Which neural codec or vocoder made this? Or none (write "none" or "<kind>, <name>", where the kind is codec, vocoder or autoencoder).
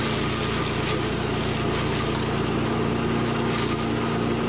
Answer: none